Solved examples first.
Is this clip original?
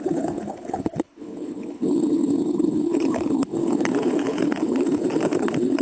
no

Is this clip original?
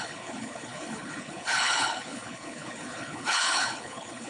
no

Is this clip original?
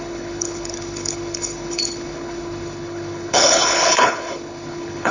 no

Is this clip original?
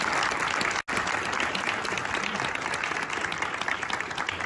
yes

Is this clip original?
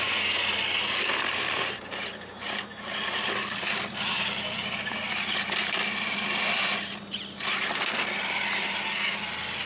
yes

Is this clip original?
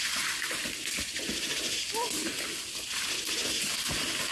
yes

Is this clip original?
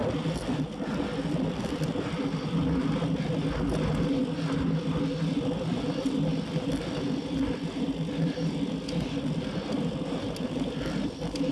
yes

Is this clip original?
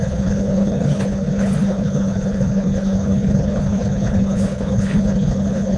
no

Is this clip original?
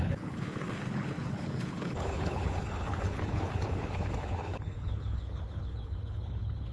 no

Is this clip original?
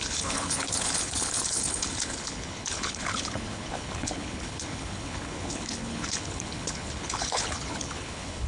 no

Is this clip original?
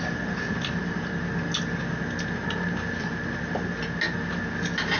yes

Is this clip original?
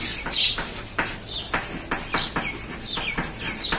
yes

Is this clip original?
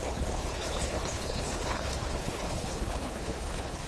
no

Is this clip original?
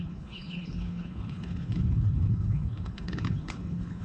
no